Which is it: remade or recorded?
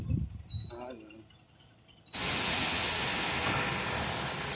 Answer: recorded